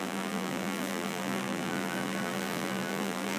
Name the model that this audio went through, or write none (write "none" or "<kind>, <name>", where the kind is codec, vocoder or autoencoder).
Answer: vocoder, BigVGAN v2